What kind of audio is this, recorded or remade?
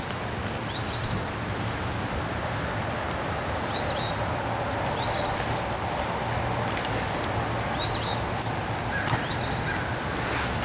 recorded